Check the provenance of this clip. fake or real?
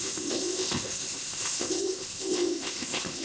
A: fake